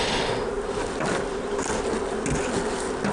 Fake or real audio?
real